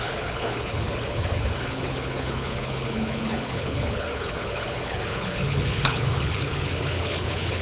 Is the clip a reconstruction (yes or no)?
yes